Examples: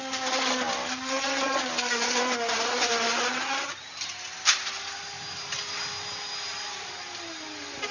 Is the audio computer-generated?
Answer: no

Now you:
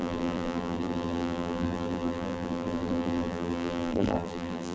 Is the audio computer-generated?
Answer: yes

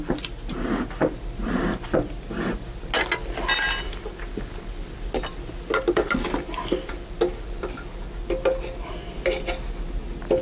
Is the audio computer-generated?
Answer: no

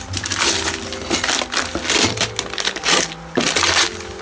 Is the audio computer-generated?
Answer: no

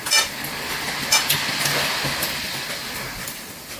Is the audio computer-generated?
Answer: no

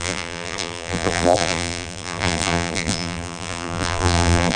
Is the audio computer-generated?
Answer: yes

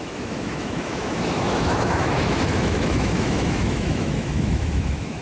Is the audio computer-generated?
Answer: yes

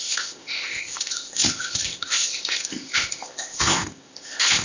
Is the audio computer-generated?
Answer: yes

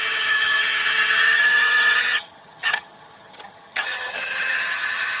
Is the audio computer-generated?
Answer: yes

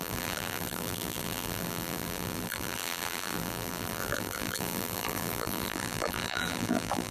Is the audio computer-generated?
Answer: yes